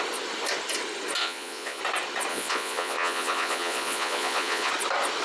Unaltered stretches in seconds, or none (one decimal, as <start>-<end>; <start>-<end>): 0.0-1.2; 1.8-2.3; 4.7-5.2